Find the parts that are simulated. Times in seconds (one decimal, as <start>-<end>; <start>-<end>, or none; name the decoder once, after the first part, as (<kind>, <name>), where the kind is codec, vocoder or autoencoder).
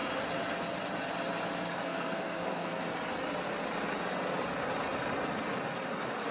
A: 1.7-2.8 (codec, SNAC)